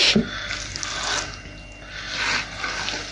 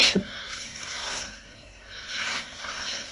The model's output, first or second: second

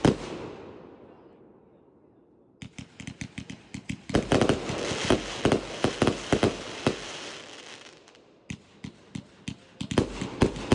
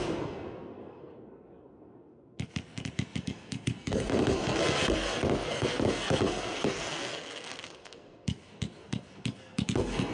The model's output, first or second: second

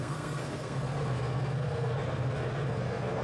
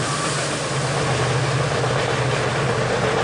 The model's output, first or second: first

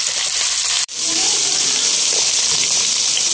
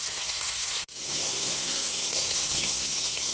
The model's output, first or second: second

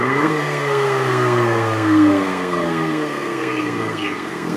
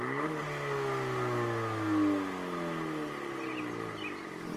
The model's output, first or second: first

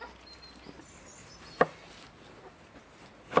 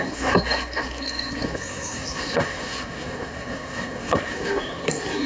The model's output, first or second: second